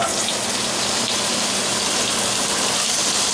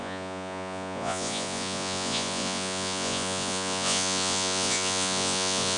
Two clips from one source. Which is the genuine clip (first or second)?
first